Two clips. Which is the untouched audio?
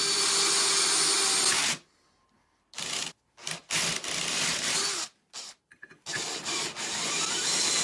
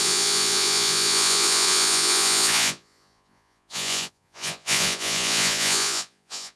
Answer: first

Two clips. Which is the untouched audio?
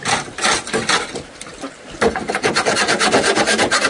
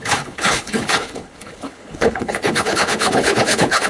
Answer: first